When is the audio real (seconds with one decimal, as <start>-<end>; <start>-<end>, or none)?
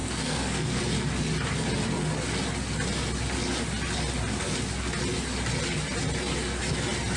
0.8-7.2